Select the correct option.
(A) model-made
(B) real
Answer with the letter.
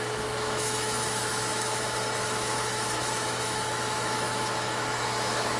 A